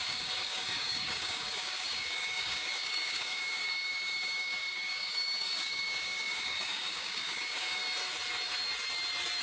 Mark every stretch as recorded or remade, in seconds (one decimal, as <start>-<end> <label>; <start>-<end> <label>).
0.0-7.8 remade; 7.8-9.4 recorded